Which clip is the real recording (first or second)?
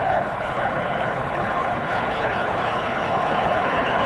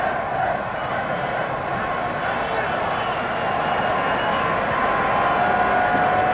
second